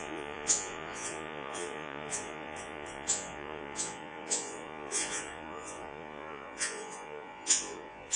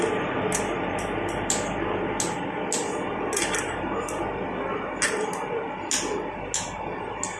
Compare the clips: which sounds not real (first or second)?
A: first